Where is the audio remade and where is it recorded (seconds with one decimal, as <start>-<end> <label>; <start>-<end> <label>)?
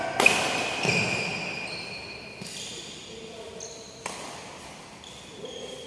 0.0-5.9 recorded